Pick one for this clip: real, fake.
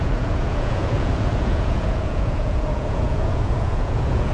fake